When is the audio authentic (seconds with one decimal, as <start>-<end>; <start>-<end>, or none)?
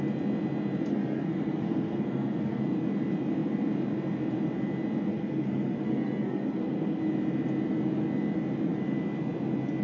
0.0-0.9; 2.6-5.1; 7.0-9.8